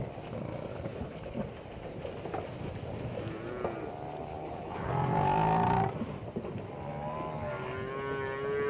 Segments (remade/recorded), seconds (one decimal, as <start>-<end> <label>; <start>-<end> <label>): 0.0-0.7 recorded; 0.7-1.4 remade; 1.4-4.3 recorded; 4.3-4.9 remade; 4.9-8.7 recorded